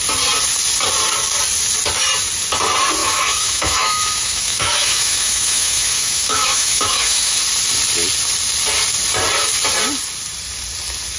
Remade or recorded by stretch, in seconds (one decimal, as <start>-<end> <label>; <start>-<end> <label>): 0.0-3.0 recorded; 3.0-7.4 remade; 7.4-11.2 recorded